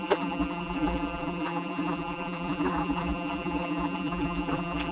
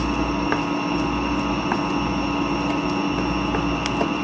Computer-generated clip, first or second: first